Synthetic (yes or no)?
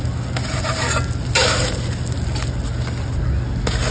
no